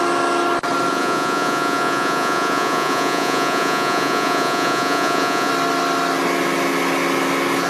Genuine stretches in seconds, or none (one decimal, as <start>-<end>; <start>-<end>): 0.0-0.9; 5.5-7.7